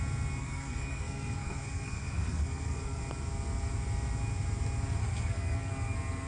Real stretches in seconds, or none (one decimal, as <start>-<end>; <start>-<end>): 0.0-0.4; 3.0-5.0; 5.7-6.3